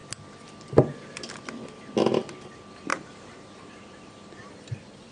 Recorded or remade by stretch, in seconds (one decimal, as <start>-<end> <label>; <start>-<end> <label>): 0.0-2.9 recorded; 2.9-4.5 remade; 4.5-5.1 recorded